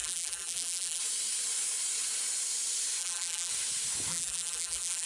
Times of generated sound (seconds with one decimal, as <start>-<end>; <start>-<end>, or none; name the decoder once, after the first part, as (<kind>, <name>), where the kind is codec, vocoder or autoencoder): 0.0-1.0 (vocoder, BigVGAN v2); 3.0-3.5; 4.1-5.1